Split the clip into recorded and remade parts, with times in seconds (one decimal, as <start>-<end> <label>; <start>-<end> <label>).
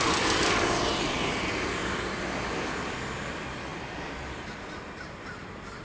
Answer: 0.0-5.8 remade